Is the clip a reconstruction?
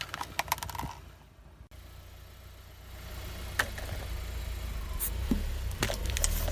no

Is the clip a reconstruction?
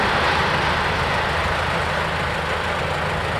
no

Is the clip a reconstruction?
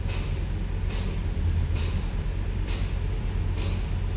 no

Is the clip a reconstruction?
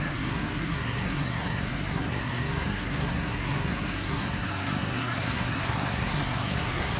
yes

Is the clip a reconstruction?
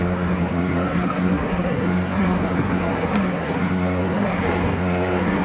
yes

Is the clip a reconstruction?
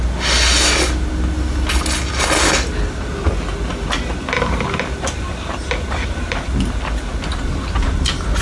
no